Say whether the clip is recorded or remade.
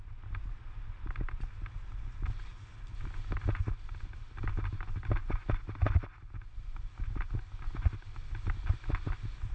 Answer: recorded